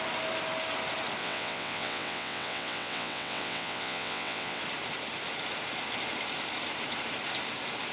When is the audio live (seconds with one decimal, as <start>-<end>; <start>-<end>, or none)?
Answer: 0.0-1.2; 4.6-7.9